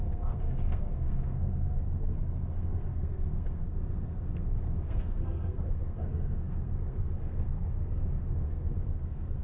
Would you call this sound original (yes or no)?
no